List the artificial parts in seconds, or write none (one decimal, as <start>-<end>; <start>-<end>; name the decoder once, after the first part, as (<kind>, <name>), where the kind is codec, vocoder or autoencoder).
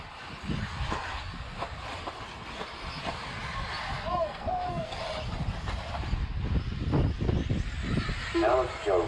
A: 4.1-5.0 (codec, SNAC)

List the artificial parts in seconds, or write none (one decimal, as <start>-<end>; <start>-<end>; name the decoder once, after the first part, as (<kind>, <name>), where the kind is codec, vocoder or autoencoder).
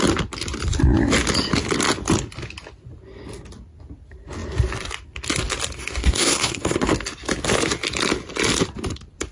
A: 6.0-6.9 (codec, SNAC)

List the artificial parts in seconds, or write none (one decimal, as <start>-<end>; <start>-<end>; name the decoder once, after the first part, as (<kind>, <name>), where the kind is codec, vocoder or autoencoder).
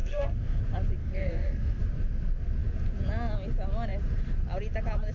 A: 0.0-0.6 (codec, SNAC); 1.0-1.8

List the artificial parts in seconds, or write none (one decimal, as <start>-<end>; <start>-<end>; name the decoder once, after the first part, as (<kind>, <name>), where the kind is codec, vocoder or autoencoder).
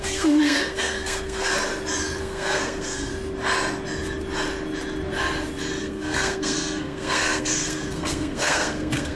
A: 0.0-1.5 (codec, SNAC); 2.2-3.1; 5.8-9.2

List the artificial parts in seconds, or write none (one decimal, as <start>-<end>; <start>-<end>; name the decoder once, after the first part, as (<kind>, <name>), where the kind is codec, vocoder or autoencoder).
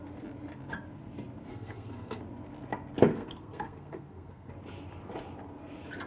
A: 1.5-2.2 (codec, SNAC); 3.1-4.5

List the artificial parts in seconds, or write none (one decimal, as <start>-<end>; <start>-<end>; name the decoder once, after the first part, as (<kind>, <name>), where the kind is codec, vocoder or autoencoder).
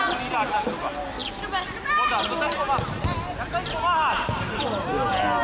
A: none